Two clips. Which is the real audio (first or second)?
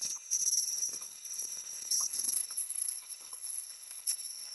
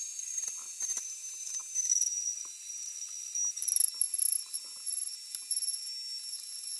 second